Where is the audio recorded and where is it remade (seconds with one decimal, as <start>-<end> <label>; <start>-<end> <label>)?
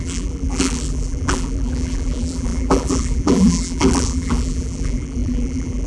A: 0.0-5.9 remade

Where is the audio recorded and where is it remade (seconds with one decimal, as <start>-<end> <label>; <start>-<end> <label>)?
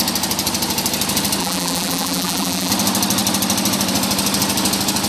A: 0.0-1.4 recorded; 1.4-2.7 remade; 2.7-5.1 recorded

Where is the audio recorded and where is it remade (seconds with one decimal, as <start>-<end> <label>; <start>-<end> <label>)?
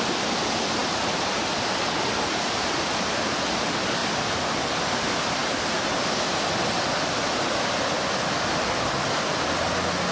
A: 0.0-0.8 recorded; 0.8-1.5 remade; 1.5-10.1 recorded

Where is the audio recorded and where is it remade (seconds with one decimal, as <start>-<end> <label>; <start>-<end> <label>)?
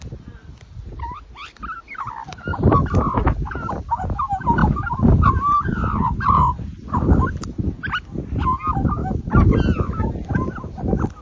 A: 0.0-2.5 recorded; 2.5-3.0 remade; 3.0-4.6 recorded; 4.6-6.4 remade; 6.4-9.0 recorded; 9.0-9.9 remade; 9.9-11.2 recorded